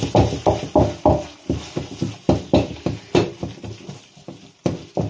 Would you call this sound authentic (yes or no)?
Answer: yes